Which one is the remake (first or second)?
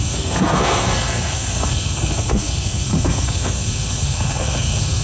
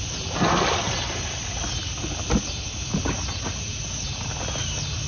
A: first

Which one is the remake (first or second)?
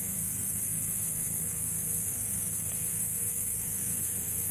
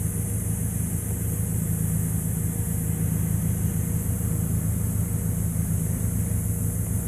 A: first